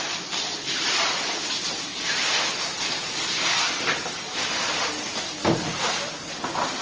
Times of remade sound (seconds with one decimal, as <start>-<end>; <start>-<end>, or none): none